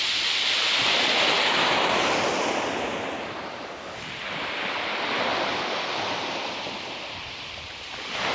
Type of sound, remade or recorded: recorded